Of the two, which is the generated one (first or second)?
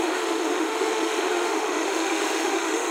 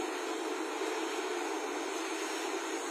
first